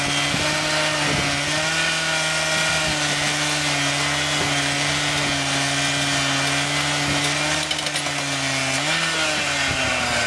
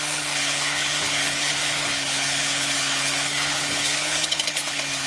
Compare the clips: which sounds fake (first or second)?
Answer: second